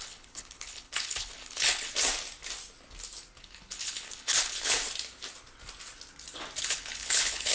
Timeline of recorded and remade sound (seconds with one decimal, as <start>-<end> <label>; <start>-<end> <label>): 0.0-1.9 remade; 1.9-3.4 recorded; 3.4-4.8 remade; 4.8-6.6 recorded; 6.6-7.5 remade